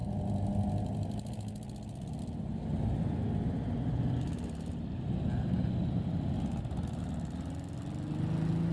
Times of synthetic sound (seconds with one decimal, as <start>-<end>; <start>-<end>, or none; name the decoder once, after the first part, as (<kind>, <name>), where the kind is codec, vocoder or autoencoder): none